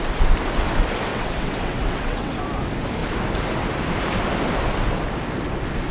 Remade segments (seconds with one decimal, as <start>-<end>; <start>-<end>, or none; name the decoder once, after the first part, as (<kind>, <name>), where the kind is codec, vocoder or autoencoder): 1.1-2.3 (vocoder, WaveNeXt)